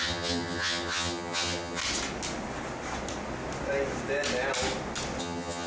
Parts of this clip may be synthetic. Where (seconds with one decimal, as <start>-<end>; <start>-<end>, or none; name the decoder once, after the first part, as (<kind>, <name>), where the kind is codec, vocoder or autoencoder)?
0.0-1.8 (vocoder, HiFi-GAN); 5.2-5.7